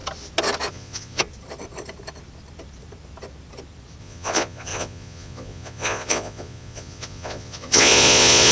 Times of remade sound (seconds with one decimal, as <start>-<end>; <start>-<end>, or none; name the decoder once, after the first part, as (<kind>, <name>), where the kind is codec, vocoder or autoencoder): 0.7-1.2 (vocoder, Vocos); 4.0-8.5